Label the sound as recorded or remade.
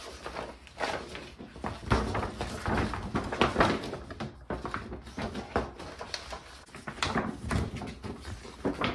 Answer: recorded